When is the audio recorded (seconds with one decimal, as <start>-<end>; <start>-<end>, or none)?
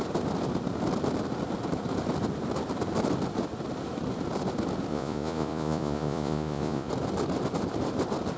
0.0-4.9; 6.9-8.4